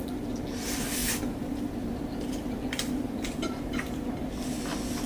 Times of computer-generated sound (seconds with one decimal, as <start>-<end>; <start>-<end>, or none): 1.0-4.1

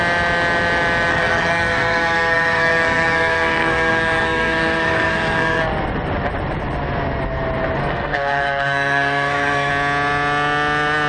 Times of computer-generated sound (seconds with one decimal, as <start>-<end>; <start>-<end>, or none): 1.1-5.6; 7.8-9.7

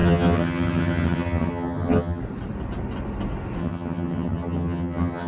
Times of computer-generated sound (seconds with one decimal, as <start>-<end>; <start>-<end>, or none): 0.0-2.2; 3.6-5.3

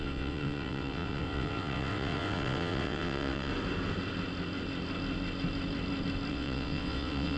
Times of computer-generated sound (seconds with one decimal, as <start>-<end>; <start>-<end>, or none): 0.0-3.5; 6.3-7.4